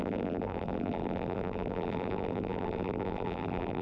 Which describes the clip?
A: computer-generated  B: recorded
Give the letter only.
A